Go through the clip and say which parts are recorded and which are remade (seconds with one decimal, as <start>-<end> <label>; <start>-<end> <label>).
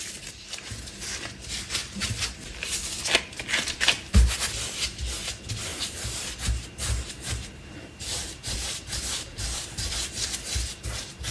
0.0-5.7 recorded; 5.7-9.9 remade; 9.9-11.3 recorded